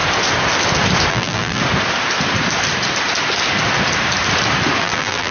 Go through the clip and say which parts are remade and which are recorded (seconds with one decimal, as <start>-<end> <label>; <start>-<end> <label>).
0.0-1.1 recorded; 1.1-1.6 remade; 1.6-4.8 recorded; 4.8-5.3 remade